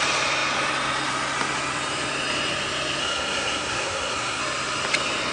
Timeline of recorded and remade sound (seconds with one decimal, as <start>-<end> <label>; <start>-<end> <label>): 0.0-3.0 recorded; 3.0-4.4 remade; 4.4-5.3 recorded